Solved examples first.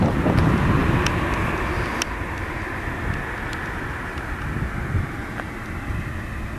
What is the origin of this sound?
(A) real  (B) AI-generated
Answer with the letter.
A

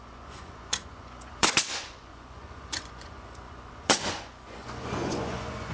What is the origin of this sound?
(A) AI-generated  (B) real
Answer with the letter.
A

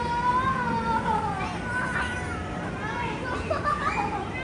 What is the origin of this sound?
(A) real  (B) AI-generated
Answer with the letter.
A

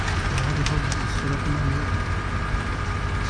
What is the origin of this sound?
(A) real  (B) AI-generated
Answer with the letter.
A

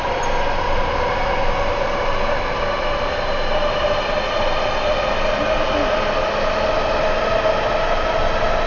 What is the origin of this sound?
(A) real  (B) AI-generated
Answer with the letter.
A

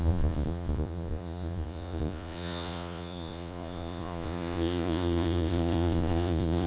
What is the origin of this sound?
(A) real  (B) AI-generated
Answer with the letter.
B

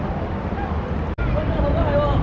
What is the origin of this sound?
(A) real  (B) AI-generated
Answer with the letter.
A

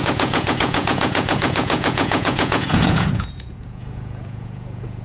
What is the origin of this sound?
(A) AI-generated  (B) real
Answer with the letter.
A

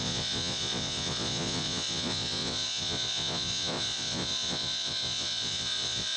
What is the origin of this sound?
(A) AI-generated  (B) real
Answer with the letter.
A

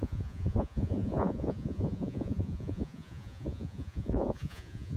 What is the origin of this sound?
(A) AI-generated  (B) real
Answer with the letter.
A